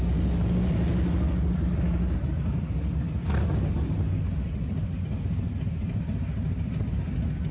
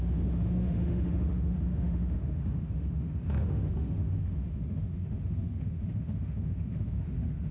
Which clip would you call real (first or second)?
first